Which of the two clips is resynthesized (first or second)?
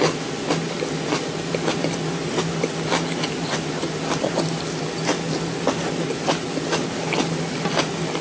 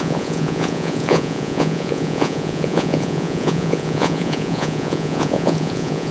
second